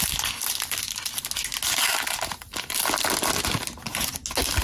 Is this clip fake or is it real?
real